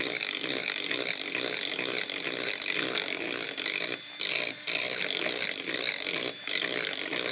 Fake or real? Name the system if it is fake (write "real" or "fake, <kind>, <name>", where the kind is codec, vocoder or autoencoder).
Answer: real